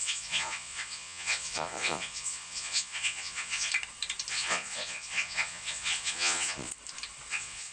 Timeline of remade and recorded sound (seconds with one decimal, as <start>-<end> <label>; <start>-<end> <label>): 0.0-3.7 remade; 3.7-4.3 recorded; 4.3-6.7 remade; 6.7-7.3 recorded; 7.3-7.7 remade